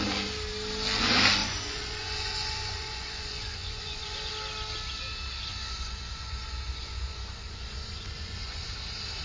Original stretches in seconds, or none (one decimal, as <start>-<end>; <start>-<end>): 0.0-1.4; 4.3-5.5; 8.7-9.2